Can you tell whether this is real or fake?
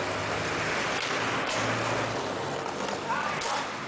real